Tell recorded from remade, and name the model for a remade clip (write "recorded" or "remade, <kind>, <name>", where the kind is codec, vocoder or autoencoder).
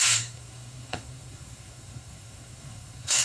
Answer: remade, codec, SNAC